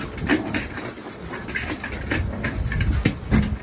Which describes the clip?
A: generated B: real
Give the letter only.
B